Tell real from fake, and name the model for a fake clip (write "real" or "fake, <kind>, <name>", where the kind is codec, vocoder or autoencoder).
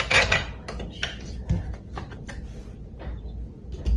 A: real